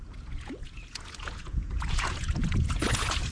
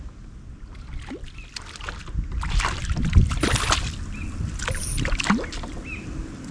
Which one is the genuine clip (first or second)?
second